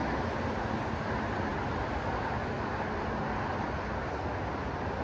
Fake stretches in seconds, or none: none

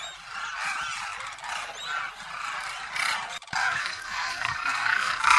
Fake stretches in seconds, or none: 3.6-5.4 (codec, SNAC)

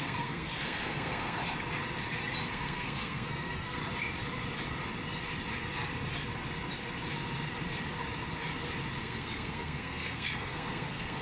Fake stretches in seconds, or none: 0.0-1.4 (codec, SNAC); 2.5-3.8; 9.0-11.2

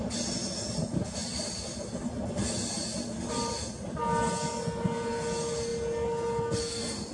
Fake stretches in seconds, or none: none

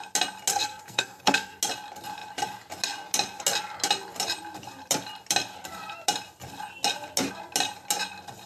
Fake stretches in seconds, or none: 0.5-1.6 (codec, SNAC)

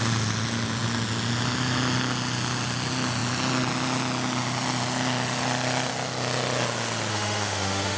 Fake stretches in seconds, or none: 7.1-8.0 (autoencoder, DAC-VAE)